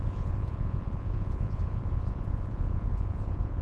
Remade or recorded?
remade